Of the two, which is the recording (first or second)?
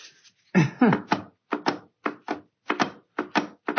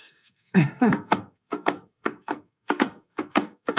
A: first